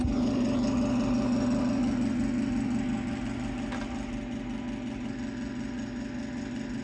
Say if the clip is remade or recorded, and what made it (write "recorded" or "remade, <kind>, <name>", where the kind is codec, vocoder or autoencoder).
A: recorded